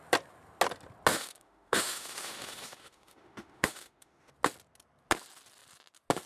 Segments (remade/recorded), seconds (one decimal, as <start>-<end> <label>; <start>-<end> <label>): 0.0-1.1 recorded; 1.1-4.3 remade; 4.3-6.3 recorded